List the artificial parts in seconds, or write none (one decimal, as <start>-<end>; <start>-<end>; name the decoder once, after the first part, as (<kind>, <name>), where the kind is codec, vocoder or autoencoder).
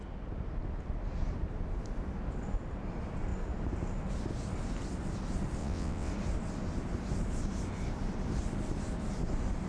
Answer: 5.6-6.1 (vocoder, WaveNeXt)